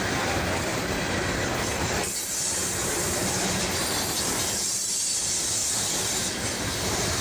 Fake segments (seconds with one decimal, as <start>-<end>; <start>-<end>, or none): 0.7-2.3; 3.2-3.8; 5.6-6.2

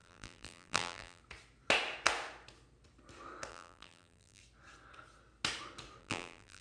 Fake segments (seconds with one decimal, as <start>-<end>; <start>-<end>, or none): 0.0-1.2; 3.5-4.4; 6.0-6.6

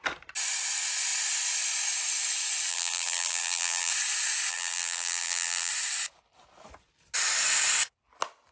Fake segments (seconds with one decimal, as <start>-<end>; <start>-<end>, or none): 2.7-3.9; 4.5-5.7